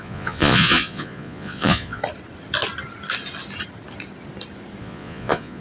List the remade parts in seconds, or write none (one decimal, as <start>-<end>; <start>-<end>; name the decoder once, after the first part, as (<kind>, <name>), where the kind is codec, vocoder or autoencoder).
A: 0.0-2.0 (vocoder, Vocos); 4.8-5.6